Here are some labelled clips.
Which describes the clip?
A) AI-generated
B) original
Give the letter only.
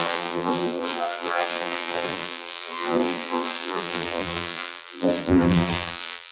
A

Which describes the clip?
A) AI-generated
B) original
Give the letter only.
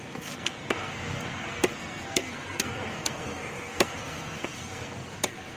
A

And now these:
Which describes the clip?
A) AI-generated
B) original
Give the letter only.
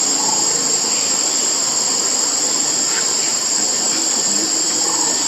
B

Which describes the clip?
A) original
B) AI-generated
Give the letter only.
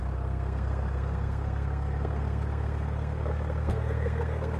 B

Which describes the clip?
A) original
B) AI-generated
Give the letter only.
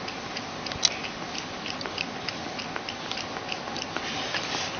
A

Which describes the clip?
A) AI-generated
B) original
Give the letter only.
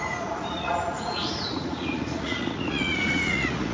A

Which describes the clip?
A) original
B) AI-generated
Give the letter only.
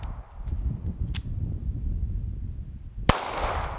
A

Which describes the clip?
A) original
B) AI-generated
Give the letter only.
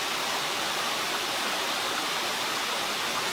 A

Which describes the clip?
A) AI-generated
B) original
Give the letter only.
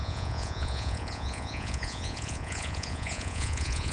A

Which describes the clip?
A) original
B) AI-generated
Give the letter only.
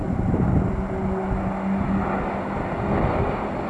A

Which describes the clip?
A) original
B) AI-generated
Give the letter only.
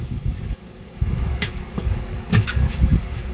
B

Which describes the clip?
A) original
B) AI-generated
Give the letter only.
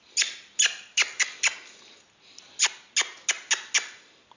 A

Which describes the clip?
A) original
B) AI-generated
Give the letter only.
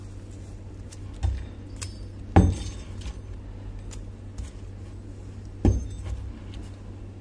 A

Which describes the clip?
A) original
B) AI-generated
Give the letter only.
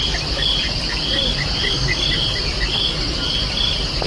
A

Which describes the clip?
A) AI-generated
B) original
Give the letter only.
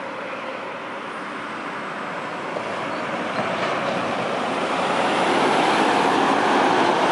B